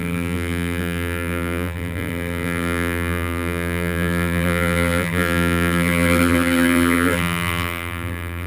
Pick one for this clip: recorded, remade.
remade